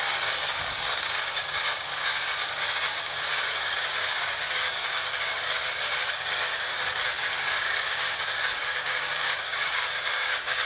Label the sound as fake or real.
fake